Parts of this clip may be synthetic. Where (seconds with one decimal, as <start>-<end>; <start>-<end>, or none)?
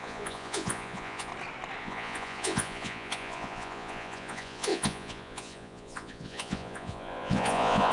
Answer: 0.0-1.3; 1.8-7.9